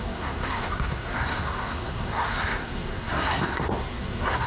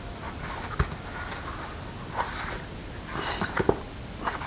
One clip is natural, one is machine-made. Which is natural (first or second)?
second